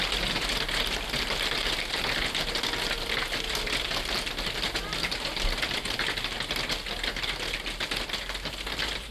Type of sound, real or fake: real